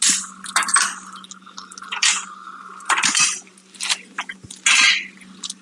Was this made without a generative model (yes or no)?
yes